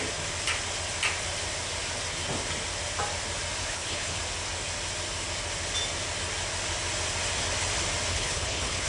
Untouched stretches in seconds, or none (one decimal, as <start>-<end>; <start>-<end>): 0.0-3.6; 4.2-8.1